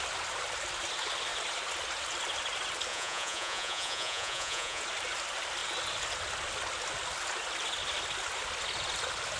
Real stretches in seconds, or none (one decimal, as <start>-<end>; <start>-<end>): 0.0-2.9; 4.8-9.4